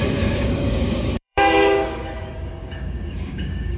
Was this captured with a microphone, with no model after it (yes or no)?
no